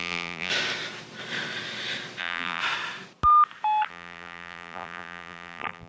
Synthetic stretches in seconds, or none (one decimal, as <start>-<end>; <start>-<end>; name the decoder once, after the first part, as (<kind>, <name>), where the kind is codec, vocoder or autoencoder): 0.0-0.5 (vocoder, BigVGAN v2); 2.2-2.6; 3.9-5.9